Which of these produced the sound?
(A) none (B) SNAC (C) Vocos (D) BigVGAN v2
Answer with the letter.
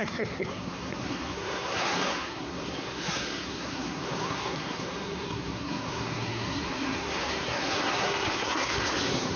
B